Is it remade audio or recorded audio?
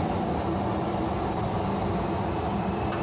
recorded